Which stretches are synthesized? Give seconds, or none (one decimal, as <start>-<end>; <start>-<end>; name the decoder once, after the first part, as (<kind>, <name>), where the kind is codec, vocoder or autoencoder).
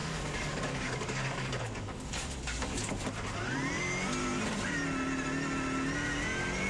0.0-2.9 (codec, DAC)